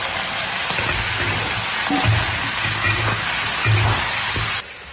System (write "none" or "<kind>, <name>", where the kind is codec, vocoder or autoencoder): none